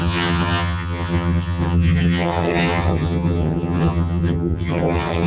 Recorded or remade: remade